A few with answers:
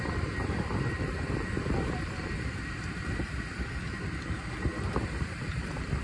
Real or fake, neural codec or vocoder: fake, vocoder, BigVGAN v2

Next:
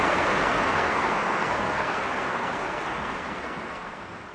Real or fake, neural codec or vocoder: fake, codec, SNAC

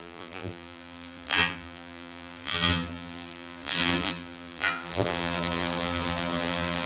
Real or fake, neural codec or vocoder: fake, vocoder, BigVGAN v2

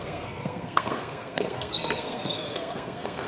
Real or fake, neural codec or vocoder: fake, codec, SNAC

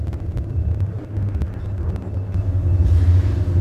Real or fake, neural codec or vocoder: real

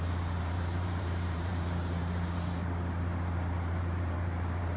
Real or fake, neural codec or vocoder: fake, vocoder, BigVGAN v2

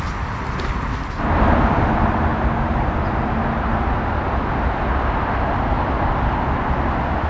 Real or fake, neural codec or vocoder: real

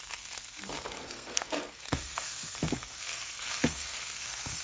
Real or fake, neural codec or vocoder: fake, codec, SNAC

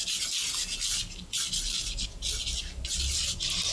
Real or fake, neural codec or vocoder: real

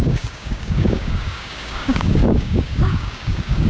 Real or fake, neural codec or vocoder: fake, codec, DAC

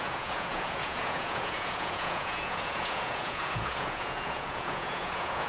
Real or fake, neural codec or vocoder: fake, vocoder, Vocos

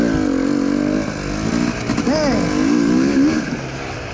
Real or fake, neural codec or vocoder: real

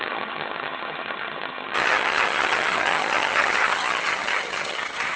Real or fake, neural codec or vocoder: fake, vocoder, HiFi-GAN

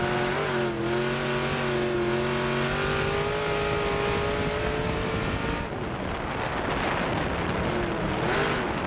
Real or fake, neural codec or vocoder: real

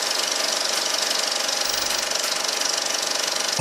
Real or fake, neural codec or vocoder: real